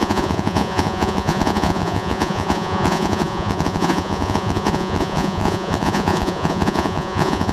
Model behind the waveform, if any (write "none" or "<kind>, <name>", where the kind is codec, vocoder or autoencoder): vocoder, Vocos